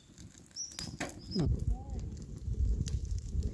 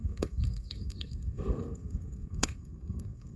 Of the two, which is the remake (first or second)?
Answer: second